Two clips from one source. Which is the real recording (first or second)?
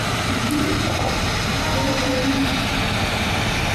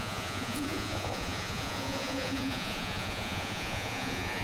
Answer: first